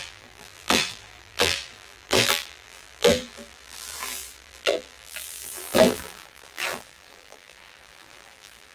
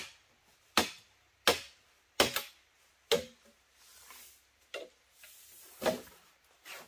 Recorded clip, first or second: second